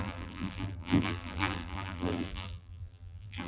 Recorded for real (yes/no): no